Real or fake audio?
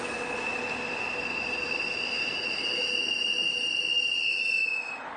real